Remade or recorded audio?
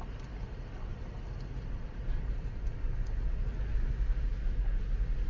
recorded